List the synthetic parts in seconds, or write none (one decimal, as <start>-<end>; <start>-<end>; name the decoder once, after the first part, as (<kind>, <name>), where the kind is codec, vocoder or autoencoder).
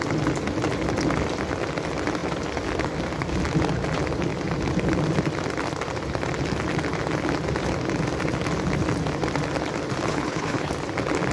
10.1-10.7 (codec, HILCodec)